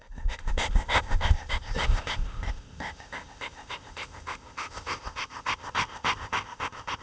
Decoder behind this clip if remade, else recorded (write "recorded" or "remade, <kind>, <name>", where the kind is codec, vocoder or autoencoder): remade, codec, ZipCodec